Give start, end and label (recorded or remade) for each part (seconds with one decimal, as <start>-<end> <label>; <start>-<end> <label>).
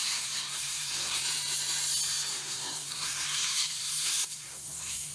0.0-1.2 remade; 1.2-2.3 recorded; 2.3-5.1 remade